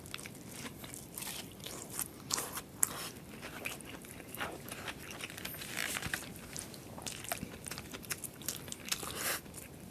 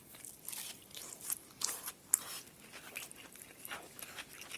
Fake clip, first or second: first